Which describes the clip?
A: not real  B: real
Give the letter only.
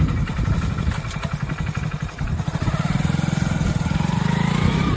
B